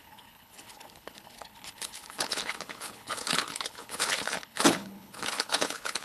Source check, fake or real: fake